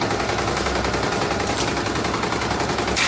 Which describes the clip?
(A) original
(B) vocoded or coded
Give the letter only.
A